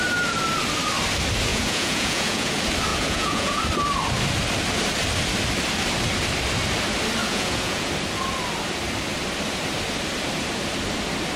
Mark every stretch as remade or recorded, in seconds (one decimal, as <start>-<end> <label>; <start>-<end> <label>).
0.0-1.5 recorded; 1.5-2.5 remade; 2.5-2.9 recorded; 2.9-3.6 remade; 3.6-7.2 recorded; 7.2-7.9 remade; 7.9-11.4 recorded